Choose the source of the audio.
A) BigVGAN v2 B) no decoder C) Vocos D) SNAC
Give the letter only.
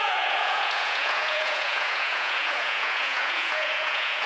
C